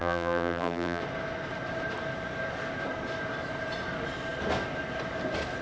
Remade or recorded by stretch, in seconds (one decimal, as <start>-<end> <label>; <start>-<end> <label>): 0.0-1.0 remade; 1.0-5.6 recorded